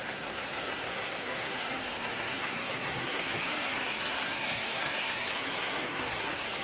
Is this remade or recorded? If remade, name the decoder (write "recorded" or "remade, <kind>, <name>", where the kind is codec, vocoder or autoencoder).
remade, codec, SNAC